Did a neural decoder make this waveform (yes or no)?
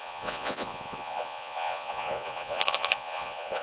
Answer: yes